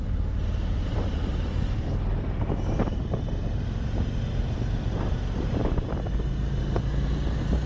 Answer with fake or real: fake